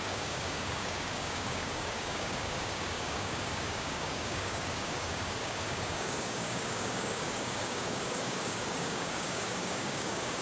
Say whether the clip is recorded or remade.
remade